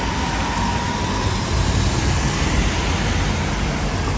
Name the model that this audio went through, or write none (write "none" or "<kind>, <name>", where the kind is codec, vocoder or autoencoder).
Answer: none